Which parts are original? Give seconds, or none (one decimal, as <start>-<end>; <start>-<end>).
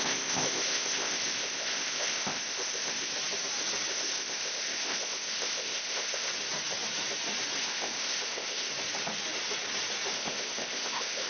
3.1-3.9; 6.3-7.6; 8.7-10.1